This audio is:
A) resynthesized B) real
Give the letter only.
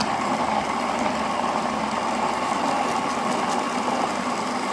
B